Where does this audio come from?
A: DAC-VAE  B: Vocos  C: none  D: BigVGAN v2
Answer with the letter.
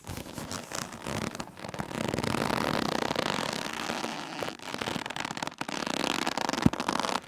C